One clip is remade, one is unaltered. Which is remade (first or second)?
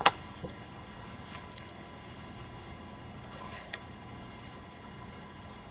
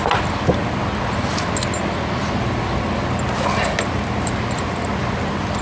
first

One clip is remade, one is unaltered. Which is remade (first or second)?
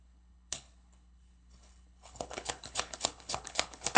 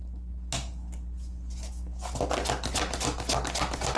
first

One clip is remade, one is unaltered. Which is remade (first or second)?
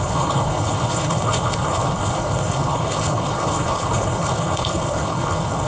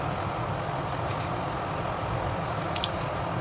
first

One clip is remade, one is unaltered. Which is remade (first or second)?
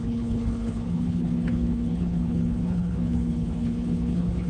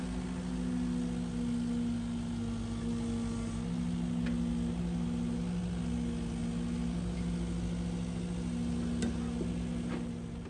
first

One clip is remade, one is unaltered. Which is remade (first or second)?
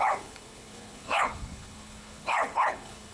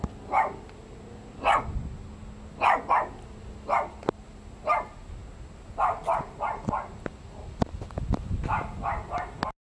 first